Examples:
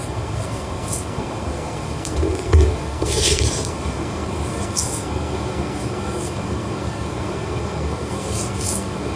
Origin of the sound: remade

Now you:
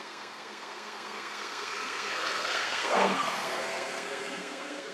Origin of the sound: remade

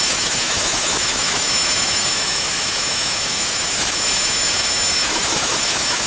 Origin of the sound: remade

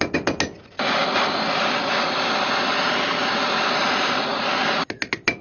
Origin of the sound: recorded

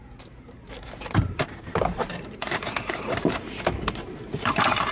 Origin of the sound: remade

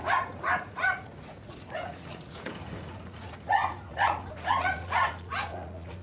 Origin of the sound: remade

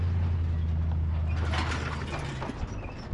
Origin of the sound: recorded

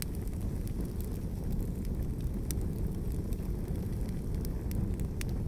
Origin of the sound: recorded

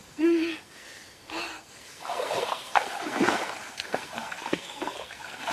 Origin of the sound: remade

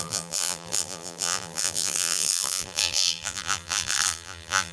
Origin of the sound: remade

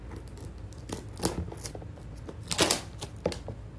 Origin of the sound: recorded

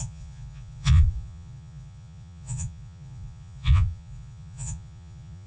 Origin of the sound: remade